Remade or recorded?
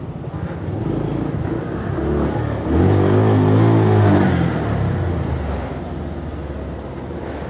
recorded